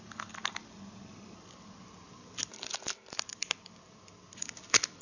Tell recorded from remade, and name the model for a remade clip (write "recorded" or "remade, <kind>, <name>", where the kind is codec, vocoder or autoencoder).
recorded